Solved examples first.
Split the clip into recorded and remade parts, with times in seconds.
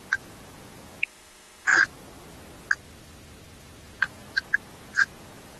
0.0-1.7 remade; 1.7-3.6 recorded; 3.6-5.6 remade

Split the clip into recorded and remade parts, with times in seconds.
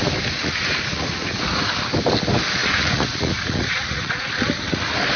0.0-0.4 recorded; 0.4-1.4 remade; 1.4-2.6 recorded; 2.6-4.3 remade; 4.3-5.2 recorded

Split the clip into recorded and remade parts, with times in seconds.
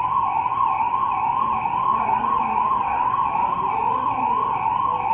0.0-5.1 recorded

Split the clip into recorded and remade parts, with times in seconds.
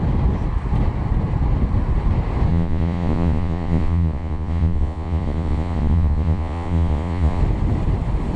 0.0-2.5 recorded; 2.5-7.4 remade; 7.4-8.4 recorded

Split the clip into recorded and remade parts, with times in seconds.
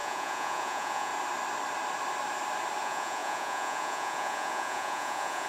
0.0-1.1 remade; 1.1-2.8 recorded; 2.8-5.5 remade